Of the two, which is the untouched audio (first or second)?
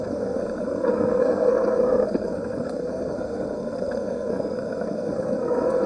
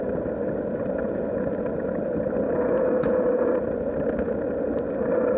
second